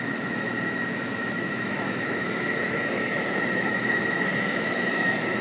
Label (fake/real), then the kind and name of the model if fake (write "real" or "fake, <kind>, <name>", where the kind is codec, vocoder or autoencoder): fake, autoencoder, DAC-VAE